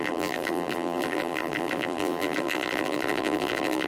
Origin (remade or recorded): remade